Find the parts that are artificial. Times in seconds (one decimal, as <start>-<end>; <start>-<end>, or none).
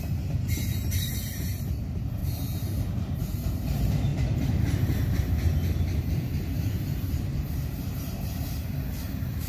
0.0-2.2; 2.9-4.1; 6.0-9.5